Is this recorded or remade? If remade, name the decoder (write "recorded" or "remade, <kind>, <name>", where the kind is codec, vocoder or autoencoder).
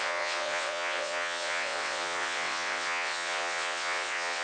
remade, vocoder, WaveNeXt